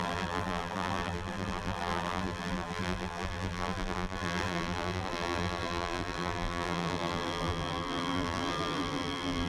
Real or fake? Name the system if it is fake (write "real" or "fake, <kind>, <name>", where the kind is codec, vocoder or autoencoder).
fake, vocoder, BigVGAN v2